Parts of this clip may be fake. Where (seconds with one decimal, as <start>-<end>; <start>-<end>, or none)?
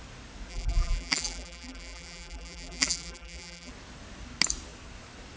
0.5-3.7